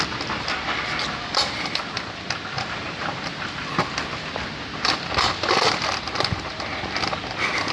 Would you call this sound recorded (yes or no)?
yes